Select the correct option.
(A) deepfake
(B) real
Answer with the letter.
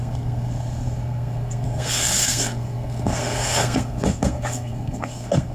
A